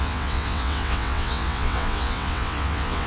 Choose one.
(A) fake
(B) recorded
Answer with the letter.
A